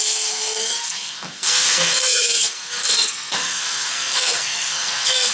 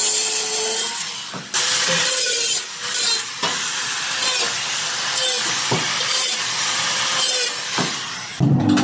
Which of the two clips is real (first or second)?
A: second